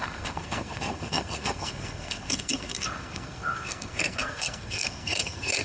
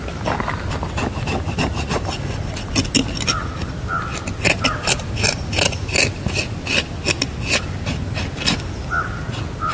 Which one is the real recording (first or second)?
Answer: second